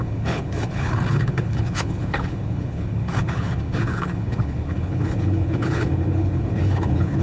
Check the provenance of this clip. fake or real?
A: fake